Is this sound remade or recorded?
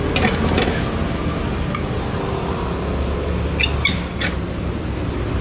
recorded